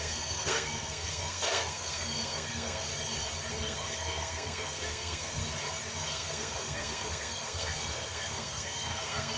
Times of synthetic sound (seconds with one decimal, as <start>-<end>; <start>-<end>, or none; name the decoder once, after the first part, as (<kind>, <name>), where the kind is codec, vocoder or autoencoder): 0.0-2.9 (codec, SNAC); 3.5-5.4; 6.1-9.4